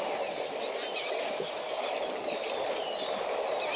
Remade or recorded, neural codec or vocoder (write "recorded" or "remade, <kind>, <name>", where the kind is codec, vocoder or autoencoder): recorded